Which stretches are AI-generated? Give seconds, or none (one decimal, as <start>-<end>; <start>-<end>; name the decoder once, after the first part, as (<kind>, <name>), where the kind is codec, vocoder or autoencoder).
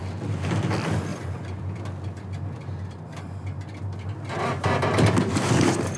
1.1-1.6 (vocoder, Vocos)